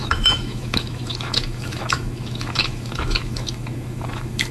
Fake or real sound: fake